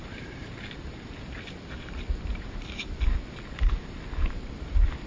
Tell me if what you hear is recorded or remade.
recorded